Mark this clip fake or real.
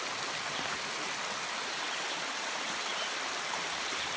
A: real